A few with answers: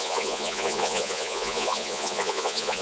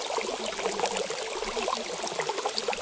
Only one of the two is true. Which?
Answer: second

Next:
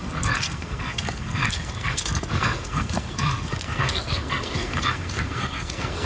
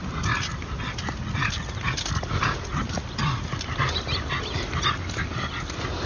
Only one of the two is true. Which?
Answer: second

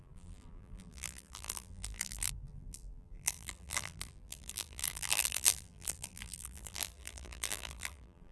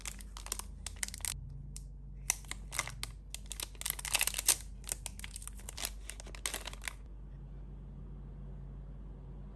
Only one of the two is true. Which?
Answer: second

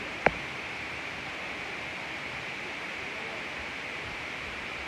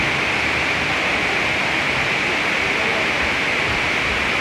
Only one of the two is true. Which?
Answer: second